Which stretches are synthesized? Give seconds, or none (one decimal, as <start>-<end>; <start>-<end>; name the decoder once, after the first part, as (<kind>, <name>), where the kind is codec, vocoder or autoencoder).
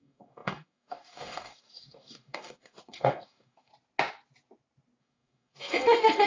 0.0-3.7 (codec, DAC); 5.0-6.3